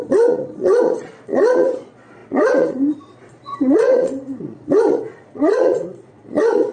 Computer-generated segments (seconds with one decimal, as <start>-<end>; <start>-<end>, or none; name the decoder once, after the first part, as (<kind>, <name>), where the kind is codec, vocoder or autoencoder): 0.0-6.7 (vocoder, Vocos)